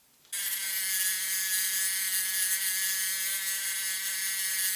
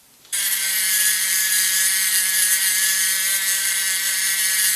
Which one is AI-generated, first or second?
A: second